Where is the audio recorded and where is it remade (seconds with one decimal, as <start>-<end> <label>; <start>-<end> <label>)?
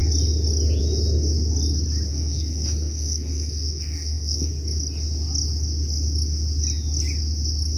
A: 0.0-2.1 recorded; 2.1-4.5 remade; 4.5-7.8 recorded